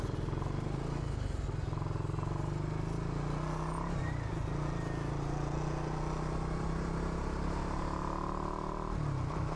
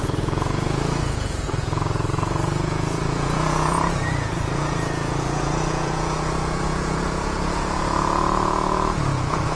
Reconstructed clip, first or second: second